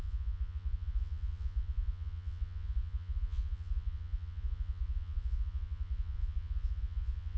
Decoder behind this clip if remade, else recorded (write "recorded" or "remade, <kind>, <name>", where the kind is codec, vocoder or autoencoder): remade, vocoder, Vocos